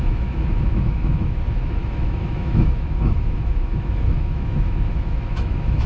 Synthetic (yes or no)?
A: yes